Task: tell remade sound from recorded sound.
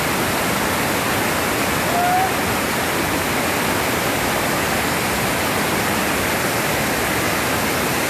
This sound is recorded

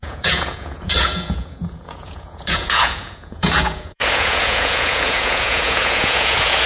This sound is remade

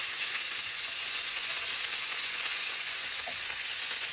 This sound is remade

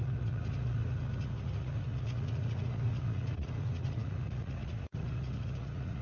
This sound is remade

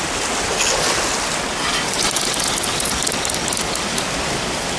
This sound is recorded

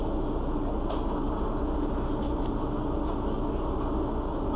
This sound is recorded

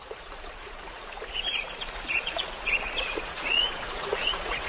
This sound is remade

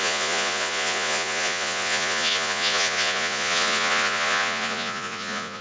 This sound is remade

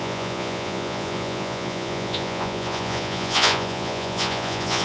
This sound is remade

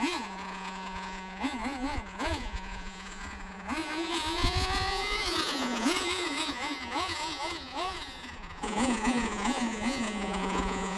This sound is remade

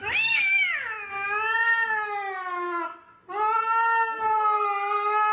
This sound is recorded